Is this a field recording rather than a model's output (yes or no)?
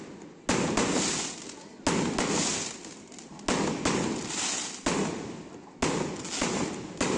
yes